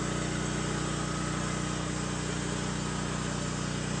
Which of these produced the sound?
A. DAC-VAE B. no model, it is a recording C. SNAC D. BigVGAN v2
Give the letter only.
B